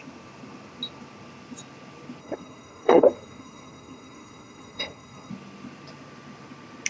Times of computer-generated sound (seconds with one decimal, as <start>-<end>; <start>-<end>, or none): 2.2-5.3